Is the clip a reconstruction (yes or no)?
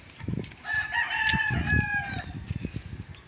no